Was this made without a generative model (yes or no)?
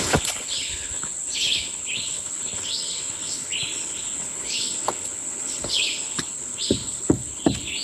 no